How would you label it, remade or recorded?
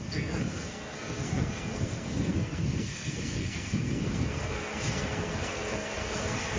remade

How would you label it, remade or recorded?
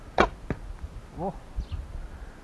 recorded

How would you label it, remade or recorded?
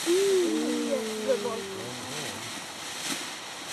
recorded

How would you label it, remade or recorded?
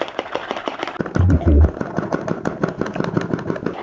recorded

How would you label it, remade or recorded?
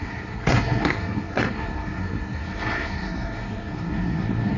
remade